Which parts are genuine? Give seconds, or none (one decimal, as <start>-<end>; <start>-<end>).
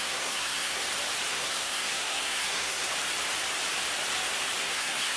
0.8-1.3; 2.9-4.6